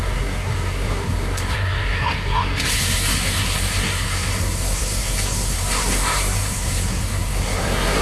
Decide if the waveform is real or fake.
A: fake